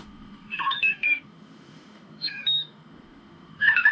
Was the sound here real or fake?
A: fake